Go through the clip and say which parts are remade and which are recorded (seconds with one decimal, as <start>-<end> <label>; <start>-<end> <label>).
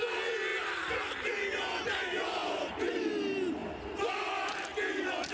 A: 0.0-0.5 recorded; 0.5-1.3 remade; 1.3-2.4 recorded; 2.4-3.1 remade; 3.1-3.6 recorded; 3.6-4.3 remade; 4.3-5.3 recorded